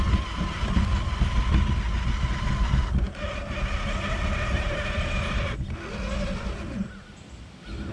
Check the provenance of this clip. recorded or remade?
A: recorded